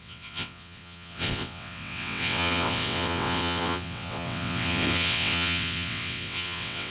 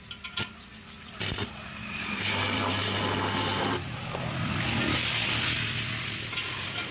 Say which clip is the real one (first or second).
second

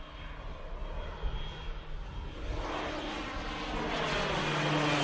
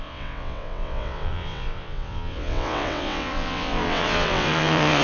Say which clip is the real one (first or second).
first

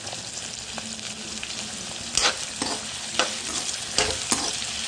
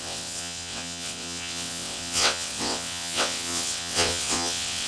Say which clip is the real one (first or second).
first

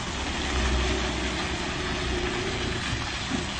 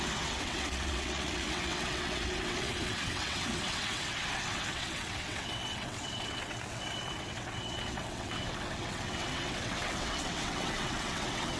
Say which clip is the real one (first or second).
first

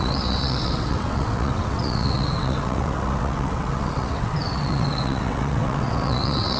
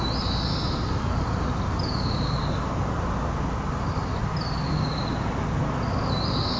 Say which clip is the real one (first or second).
second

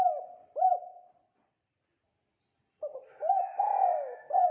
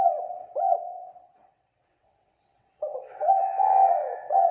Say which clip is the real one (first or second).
first